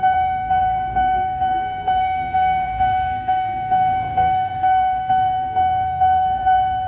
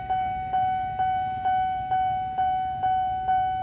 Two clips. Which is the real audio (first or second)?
second